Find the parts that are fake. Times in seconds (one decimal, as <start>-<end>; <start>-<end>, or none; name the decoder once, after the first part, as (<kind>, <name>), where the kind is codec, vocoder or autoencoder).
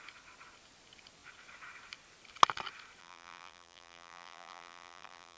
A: 3.0-5.4 (vocoder, BigVGAN v2)